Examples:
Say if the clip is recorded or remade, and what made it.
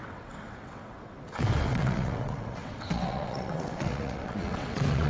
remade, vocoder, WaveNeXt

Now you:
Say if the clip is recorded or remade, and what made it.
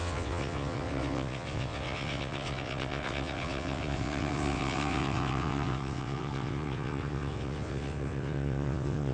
remade, vocoder, WaveNeXt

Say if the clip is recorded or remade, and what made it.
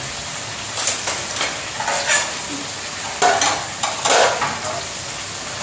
recorded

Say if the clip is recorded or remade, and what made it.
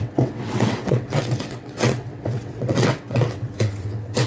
remade, vocoder, WaveNeXt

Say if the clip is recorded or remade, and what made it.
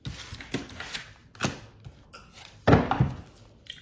recorded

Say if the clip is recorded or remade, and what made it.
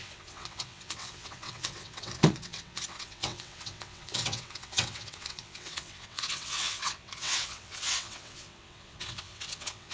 remade, vocoder, WaveNeXt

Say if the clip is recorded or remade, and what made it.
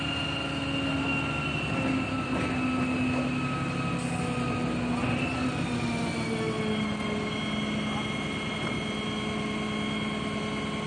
recorded